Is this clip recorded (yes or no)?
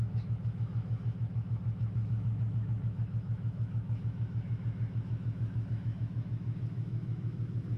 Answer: no